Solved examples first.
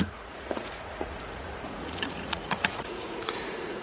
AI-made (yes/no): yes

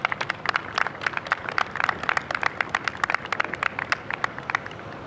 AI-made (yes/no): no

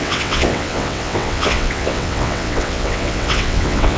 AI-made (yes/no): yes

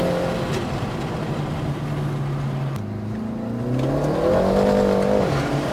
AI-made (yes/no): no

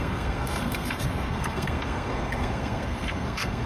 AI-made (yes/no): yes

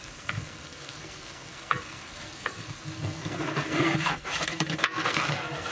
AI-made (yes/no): yes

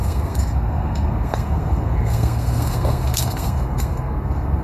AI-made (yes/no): yes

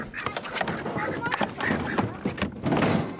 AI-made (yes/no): no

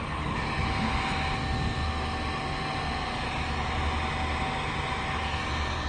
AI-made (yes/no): no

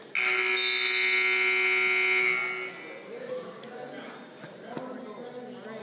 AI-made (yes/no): no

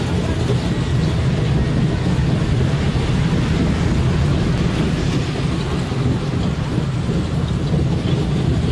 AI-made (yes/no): no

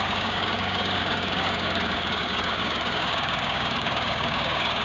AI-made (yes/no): yes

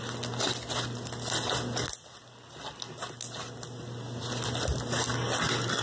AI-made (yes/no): no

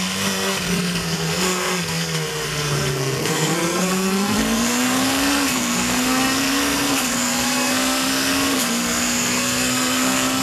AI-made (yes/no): yes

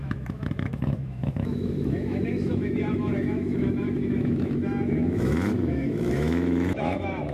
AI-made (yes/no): yes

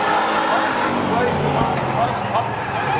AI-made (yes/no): no